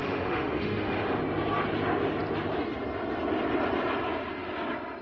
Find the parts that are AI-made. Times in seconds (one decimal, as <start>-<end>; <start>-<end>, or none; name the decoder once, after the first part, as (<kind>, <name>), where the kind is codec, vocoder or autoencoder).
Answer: 0.0-1.2 (autoencoder, DAC-VAE)